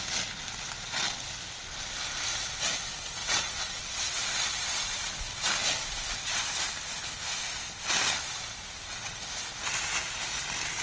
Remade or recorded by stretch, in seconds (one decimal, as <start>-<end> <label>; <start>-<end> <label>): 0.0-3.2 recorded; 3.2-5.1 remade; 5.1-10.8 recorded